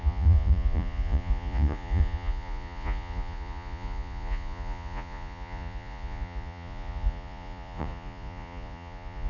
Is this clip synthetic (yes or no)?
yes